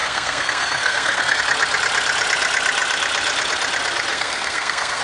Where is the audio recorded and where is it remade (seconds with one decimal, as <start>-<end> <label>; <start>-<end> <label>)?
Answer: 0.0-1.4 remade; 1.4-4.1 recorded; 4.1-5.0 remade